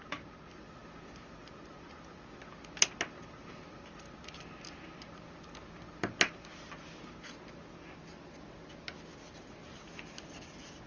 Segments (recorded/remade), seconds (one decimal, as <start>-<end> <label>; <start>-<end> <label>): 0.0-10.9 recorded